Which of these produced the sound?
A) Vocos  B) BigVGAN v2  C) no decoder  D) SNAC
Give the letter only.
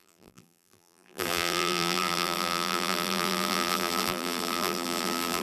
B